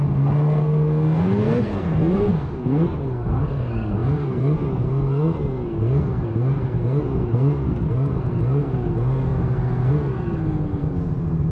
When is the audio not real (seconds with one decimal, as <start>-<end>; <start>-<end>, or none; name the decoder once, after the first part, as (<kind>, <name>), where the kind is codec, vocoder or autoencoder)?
0.0-11.5 (codec, SNAC)